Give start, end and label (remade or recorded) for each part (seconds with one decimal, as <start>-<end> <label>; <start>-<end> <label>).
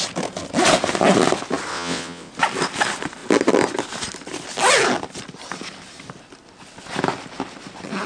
0.0-1.7 recorded; 1.7-2.3 remade; 2.3-8.1 recorded